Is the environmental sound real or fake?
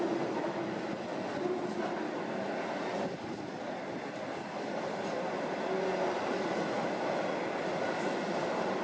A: real